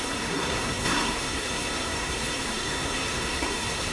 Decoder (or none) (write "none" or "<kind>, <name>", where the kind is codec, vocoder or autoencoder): codec, SNAC